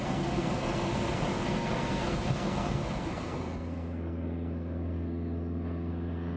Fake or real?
fake